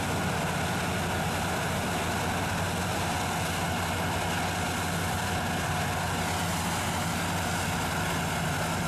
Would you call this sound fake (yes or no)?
no